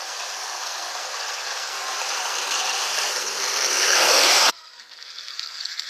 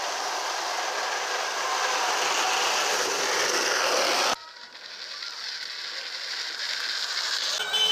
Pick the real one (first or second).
second